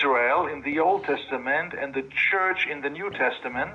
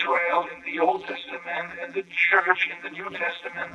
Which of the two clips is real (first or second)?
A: first